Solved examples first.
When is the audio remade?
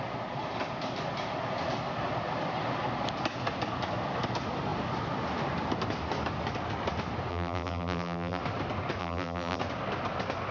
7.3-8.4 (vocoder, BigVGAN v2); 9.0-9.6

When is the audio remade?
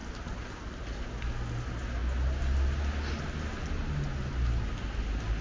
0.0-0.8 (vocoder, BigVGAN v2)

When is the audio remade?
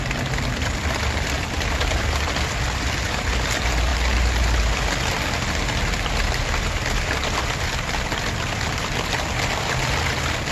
0.0-3.9 (vocoder, BigVGAN v2); 6.6-10.5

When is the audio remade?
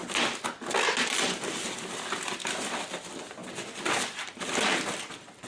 3.4-5.1 (vocoder, BigVGAN v2)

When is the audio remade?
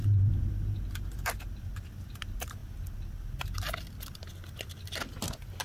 0.0-2.6 (vocoder, BigVGAN v2)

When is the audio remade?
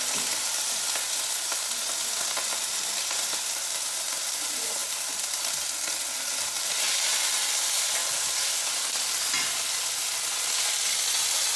4.8-5.4 (vocoder, BigVGAN v2)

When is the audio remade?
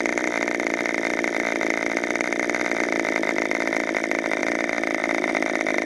none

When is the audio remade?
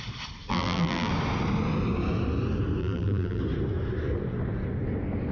0.5-1.1 (vocoder, BigVGAN v2); 2.8-3.4